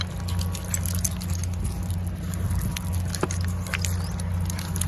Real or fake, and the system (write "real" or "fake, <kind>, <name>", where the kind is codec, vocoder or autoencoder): real